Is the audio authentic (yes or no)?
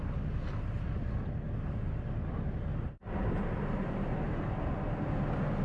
yes